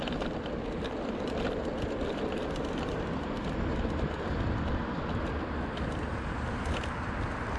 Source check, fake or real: real